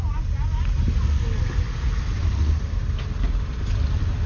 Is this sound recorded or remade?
recorded